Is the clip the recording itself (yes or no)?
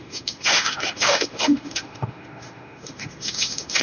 no